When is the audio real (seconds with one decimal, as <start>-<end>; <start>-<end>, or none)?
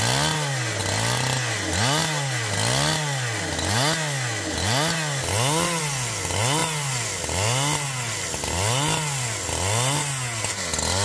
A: 0.0-11.0